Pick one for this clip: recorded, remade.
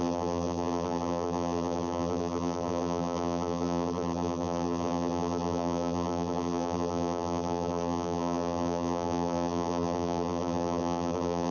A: remade